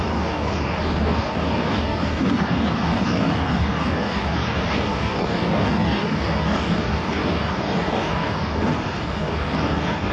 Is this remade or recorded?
remade